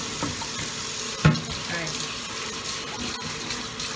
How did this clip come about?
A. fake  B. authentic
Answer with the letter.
B